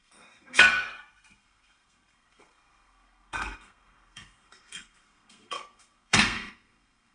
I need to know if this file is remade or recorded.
remade